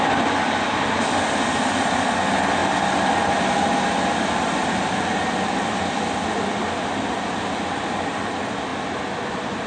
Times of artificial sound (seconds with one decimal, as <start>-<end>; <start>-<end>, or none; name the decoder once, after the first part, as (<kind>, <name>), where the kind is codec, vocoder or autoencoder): none